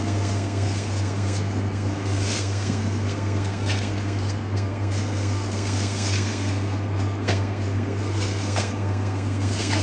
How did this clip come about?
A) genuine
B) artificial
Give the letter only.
B